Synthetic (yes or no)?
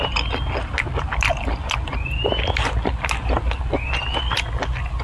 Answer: no